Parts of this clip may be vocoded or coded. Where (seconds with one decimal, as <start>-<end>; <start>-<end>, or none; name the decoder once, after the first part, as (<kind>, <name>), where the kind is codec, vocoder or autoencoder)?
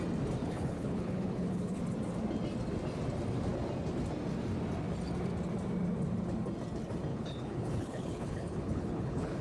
0.4-1.8 (codec, HILCodec); 7.1-9.4